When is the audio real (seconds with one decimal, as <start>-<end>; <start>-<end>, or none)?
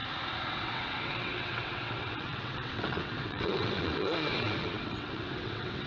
0.0-0.5